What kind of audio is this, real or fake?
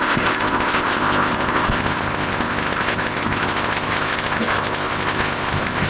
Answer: fake